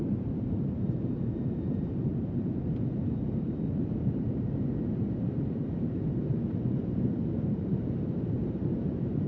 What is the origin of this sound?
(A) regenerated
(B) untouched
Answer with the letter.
A